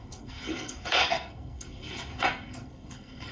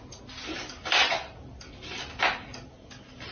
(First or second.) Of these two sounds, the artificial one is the first